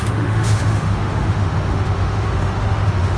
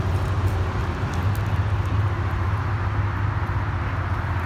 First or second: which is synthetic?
first